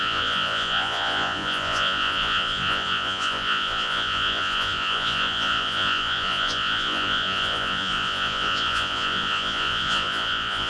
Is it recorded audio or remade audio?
remade